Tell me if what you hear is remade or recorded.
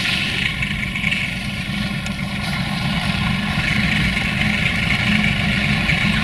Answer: recorded